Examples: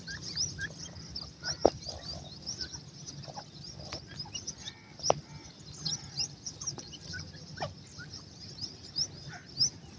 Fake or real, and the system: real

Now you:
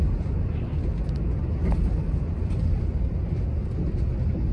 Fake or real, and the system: real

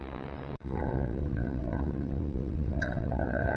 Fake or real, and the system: fake, vocoder, WaveNeXt